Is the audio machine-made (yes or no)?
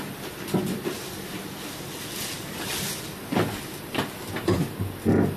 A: no